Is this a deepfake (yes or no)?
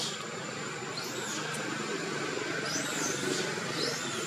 no